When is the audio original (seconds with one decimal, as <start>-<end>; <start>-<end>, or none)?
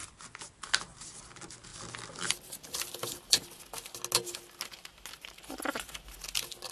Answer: 0.0-1.7; 3.6-6.7